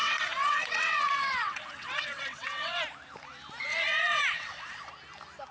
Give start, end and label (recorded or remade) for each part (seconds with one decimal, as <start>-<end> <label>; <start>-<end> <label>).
0.0-2.8 remade; 2.8-3.7 recorded; 3.7-4.9 remade; 4.9-5.5 recorded